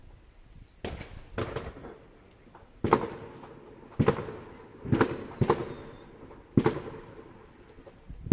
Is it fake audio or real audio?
real